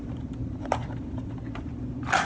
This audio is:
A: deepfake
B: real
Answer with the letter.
B